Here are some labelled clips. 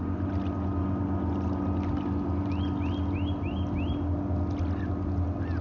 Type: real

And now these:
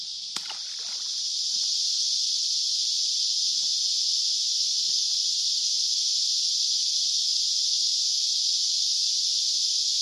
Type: real